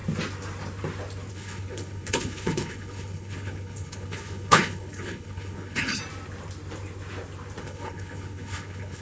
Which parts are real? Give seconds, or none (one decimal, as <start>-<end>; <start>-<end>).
0.0-1.3; 6.0-7.6